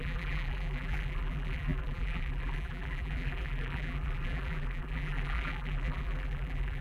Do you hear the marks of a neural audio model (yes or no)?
yes